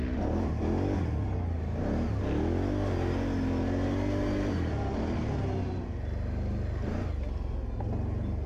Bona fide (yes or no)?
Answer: yes